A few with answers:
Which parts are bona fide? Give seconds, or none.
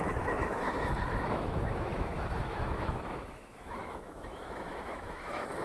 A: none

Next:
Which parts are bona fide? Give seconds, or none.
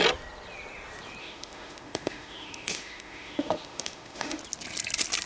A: 0.0-1.2; 4.4-5.3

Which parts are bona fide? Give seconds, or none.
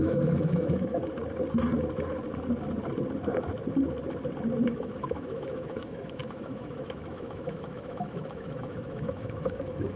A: 1.0-4.7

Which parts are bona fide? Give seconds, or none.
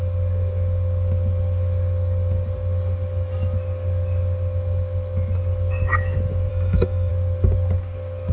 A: 0.0-6.5; 7.1-8.3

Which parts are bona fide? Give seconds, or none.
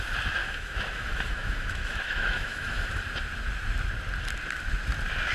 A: 0.0-0.4; 3.0-5.3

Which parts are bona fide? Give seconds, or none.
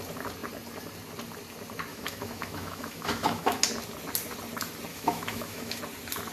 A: 0.0-1.9; 3.6-4.9; 5.8-6.3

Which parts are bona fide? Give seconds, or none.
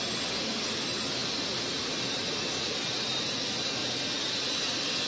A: 0.0-5.1